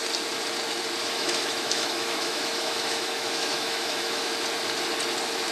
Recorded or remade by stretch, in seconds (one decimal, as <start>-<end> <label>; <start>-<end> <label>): 0.0-1.0 recorded; 1.0-4.3 remade; 4.3-5.5 recorded